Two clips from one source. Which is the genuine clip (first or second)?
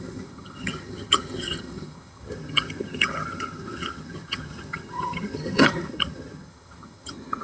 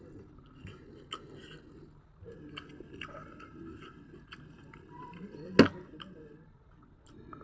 second